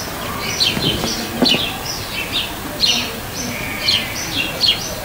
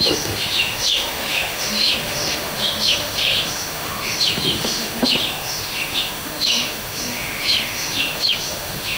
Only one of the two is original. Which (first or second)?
first